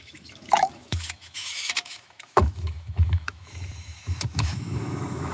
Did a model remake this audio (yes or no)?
yes